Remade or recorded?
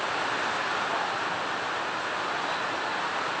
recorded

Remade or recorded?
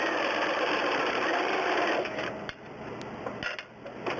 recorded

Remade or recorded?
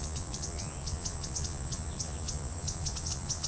remade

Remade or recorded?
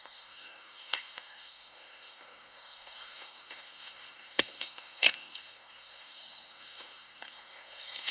remade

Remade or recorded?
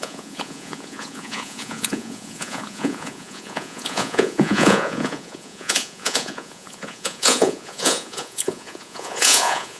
remade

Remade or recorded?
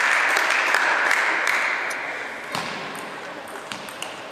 recorded